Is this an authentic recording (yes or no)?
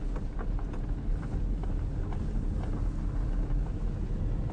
yes